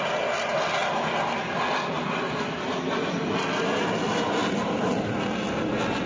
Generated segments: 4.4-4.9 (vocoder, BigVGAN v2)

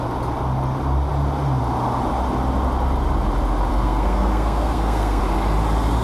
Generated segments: 3.7-5.2 (codec, SNAC)

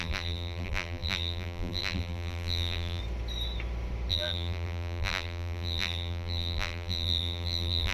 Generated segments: 0.0-3.0 (vocoder, BigVGAN v2); 4.1-7.9

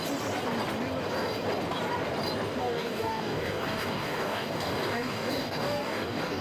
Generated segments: 2.6-6.4 (codec, DAC)

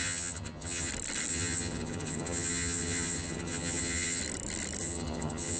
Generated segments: 0.0-0.9 (vocoder, HiFi-GAN); 1.3-4.2; 4.8-5.6

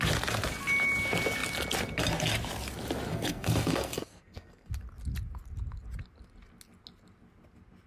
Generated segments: 3.1-4.7 (codec, SNAC)